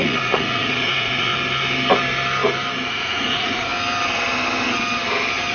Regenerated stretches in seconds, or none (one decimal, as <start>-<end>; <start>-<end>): 0.0-1.3; 2.9-3.7